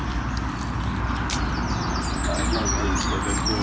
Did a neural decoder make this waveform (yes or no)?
no